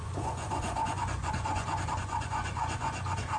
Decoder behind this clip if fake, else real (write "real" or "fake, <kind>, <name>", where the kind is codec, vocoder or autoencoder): fake, vocoder, Vocos